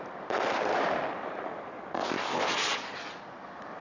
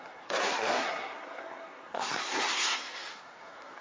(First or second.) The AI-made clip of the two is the second